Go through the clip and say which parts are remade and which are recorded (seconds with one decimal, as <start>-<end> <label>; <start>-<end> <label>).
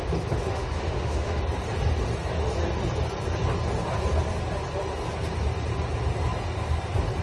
0.0-0.5 recorded; 0.5-1.4 remade; 1.4-7.2 recorded